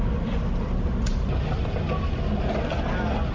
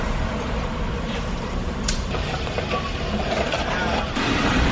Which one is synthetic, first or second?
second